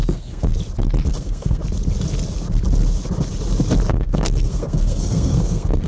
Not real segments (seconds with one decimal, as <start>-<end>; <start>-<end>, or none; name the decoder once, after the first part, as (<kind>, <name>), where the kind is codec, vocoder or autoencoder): 0.0-0.5 (codec, SNAC); 1.1-1.6; 3.9-5.9